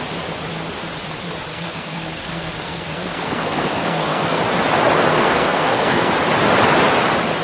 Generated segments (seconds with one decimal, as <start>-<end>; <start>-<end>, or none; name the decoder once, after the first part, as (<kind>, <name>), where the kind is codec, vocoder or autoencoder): 1.5-4.4 (codec, SNAC); 5.1-6.1